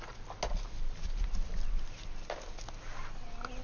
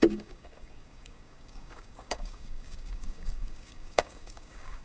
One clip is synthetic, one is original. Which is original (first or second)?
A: first